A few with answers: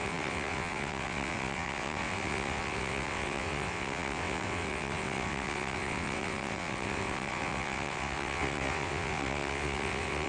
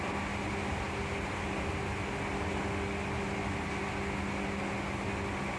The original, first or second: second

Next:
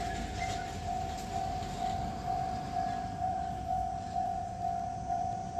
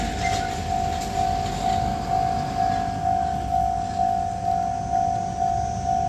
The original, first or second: second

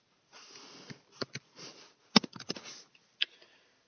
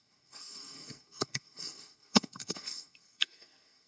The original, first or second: first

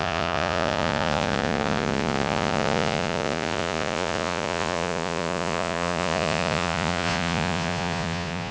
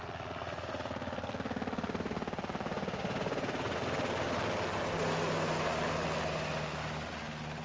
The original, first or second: second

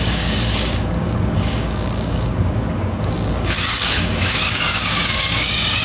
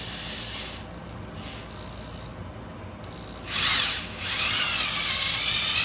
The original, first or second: second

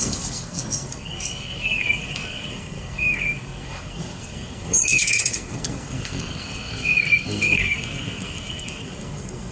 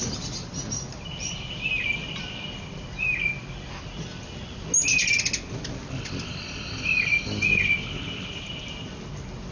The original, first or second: second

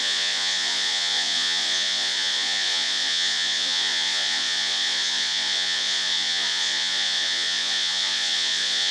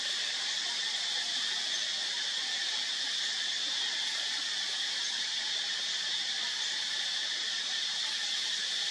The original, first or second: second